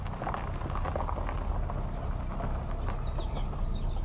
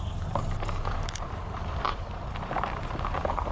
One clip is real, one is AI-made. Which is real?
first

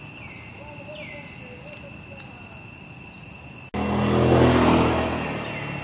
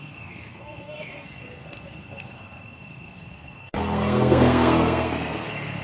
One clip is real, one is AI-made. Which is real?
first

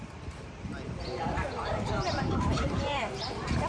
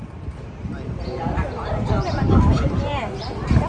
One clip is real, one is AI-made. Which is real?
second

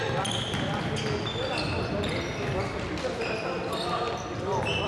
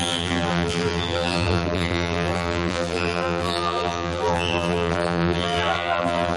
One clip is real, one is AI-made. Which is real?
first